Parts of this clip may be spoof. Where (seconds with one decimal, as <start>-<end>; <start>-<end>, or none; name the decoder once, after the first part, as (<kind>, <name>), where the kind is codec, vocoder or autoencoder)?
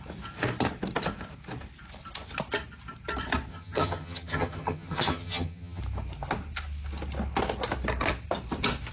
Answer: 3.5-5.8 (vocoder, HiFi-GAN)